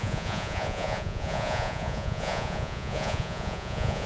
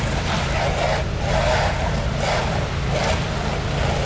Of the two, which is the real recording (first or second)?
second